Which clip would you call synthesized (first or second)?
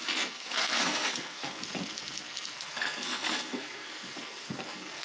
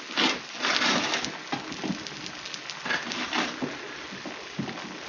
first